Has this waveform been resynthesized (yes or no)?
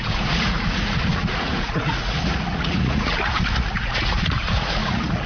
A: yes